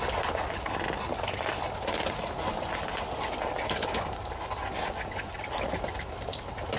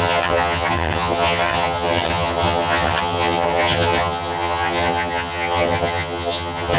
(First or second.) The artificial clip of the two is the second